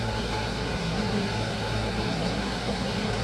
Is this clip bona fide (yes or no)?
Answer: no